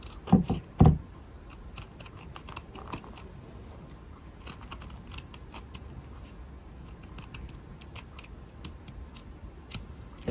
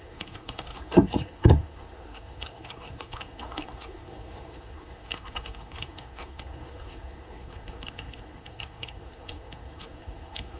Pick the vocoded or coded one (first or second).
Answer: second